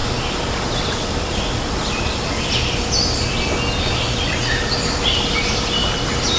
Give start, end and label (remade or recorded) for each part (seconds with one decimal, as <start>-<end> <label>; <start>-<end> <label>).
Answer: 0.0-6.4 recorded